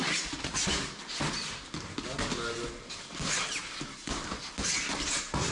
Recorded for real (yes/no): yes